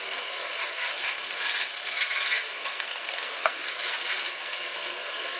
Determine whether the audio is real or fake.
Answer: fake